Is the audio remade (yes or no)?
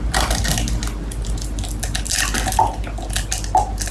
no